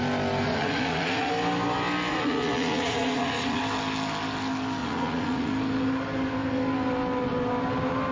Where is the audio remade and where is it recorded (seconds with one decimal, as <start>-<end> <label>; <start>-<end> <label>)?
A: 0.0-0.5 recorded; 0.5-1.3 remade; 1.3-2.1 recorded; 2.1-3.6 remade; 3.6-4.8 recorded; 4.8-5.5 remade; 5.5-8.1 recorded